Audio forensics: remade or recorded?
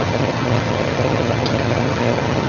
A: remade